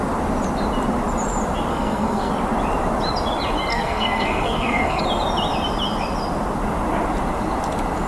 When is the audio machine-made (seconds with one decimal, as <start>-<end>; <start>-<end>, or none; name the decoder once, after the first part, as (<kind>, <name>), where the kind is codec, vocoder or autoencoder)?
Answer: 1.7-2.3 (codec, SNAC); 3.7-5.0